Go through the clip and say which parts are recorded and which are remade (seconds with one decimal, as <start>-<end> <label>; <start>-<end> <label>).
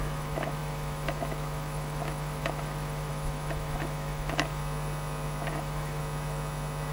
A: 0.0-4.6 remade; 4.6-5.5 recorded; 5.5-6.0 remade; 6.0-6.9 recorded